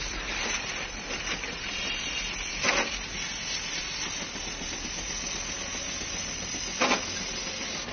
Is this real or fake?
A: real